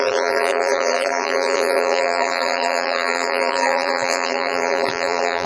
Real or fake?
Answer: fake